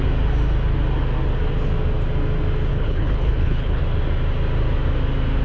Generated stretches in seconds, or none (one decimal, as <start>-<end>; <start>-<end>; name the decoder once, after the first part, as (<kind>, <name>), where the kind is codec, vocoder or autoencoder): 2.7-3.8 (codec, HILCodec)